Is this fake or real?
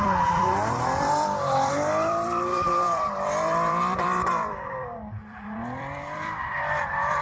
fake